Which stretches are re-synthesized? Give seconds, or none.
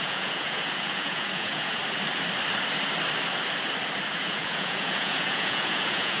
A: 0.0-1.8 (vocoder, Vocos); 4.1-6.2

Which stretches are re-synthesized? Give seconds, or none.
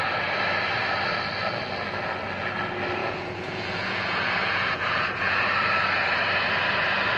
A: 3.0-5.4 (vocoder, Vocos)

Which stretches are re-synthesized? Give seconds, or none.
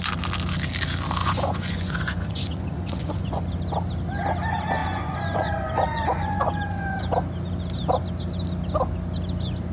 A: 1.2-3.4 (vocoder, Vocos); 4.8-7.0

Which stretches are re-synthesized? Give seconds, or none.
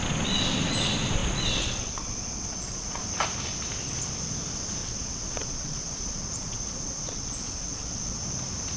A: 1.2-3.0 (vocoder, Vocos); 4.8-8.2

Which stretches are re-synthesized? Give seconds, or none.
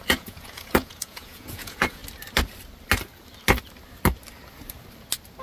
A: 0.0-2.0 (vocoder, Vocos)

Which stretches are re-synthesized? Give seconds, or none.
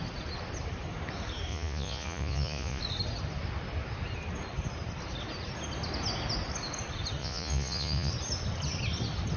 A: 1.5-2.8 (vocoder, Vocos); 7.2-8.1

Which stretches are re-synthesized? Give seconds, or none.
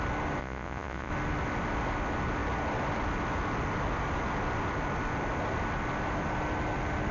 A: 0.4-1.1 (vocoder, Vocos)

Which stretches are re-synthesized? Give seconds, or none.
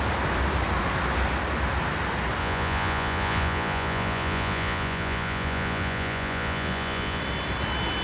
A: 2.4-7.2 (vocoder, Vocos)